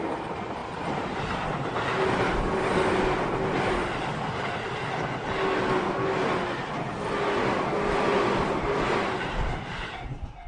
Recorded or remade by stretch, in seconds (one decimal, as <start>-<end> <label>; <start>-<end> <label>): 0.0-10.5 recorded

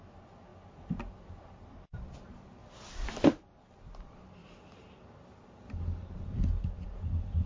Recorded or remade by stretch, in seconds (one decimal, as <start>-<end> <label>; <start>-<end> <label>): 0.0-7.5 recorded

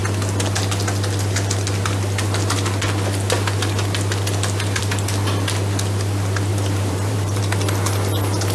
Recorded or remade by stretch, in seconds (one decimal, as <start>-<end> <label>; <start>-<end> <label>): 0.0-6.5 recorded; 6.5-7.4 remade; 7.4-8.5 recorded

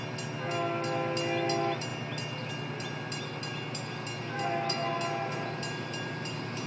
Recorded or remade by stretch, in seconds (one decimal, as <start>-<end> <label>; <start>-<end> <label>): 0.0-6.7 recorded

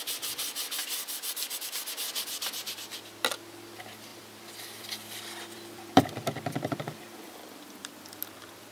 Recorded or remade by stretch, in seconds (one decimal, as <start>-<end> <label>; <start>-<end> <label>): 0.0-0.8 recorded; 0.8-1.8 remade; 1.8-4.1 recorded; 4.1-8.2 remade; 8.2-8.7 recorded

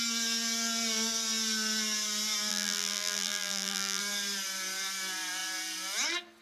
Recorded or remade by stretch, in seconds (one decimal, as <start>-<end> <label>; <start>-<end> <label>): 0.0-2.5 recorded; 2.5-4.0 remade; 4.0-6.4 recorded